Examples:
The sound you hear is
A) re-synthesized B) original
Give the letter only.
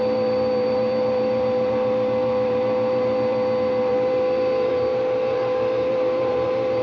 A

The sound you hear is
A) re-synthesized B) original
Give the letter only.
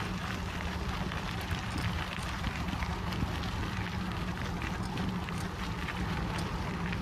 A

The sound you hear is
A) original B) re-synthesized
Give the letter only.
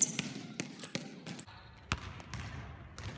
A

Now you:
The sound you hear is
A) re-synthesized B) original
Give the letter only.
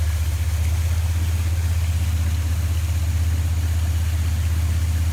B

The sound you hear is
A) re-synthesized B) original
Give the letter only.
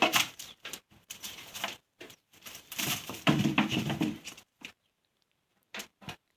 A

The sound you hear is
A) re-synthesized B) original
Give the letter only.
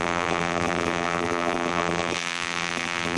A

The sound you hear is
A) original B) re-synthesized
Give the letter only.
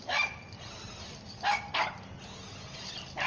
A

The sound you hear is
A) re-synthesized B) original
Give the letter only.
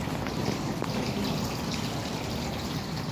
B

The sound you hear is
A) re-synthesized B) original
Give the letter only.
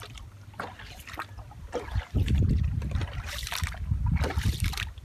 A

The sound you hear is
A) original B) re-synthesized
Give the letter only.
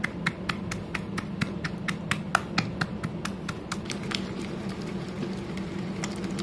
A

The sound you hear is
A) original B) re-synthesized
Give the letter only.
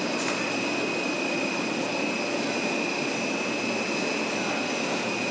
A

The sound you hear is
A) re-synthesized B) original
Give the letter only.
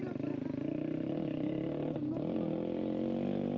B